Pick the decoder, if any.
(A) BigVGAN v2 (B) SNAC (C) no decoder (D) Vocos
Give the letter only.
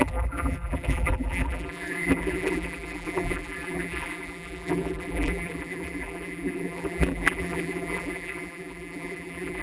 A